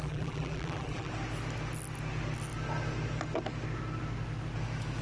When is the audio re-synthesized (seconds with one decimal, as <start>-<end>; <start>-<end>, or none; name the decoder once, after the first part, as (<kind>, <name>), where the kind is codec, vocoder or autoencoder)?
0.0-1.1 (vocoder, BigVGAN v2)